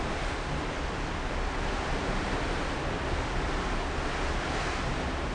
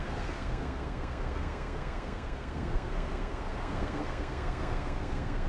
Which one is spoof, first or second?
second